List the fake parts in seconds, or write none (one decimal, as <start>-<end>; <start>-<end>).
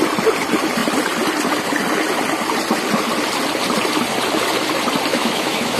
5.1-5.8